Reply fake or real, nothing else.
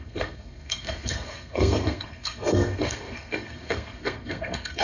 fake